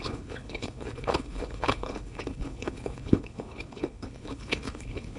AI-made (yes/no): yes